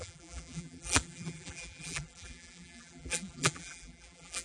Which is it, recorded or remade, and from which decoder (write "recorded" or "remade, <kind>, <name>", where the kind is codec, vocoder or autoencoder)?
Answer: remade, vocoder, BigVGAN v2